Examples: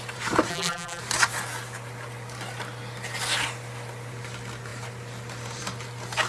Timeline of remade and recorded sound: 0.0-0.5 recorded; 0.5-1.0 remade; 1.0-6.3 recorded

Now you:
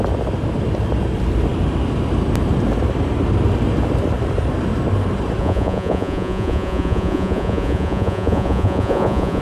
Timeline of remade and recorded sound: 0.0-5.4 recorded; 5.4-9.4 remade

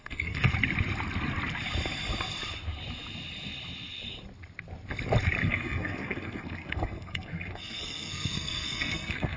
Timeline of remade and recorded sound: 0.0-0.5 remade; 0.5-5.4 recorded; 5.4-9.4 remade

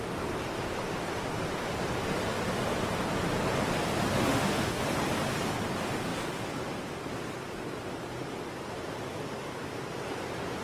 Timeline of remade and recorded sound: 0.0-4.1 recorded; 4.1-4.8 remade; 4.8-10.6 recorded

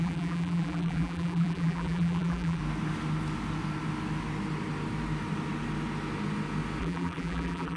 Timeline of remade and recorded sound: 0.0-2.6 remade; 2.6-6.8 recorded; 6.8-7.8 remade